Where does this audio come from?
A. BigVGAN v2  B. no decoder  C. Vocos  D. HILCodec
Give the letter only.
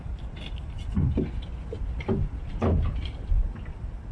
B